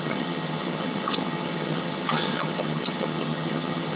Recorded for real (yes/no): no